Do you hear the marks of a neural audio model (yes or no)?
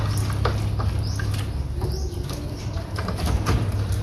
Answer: no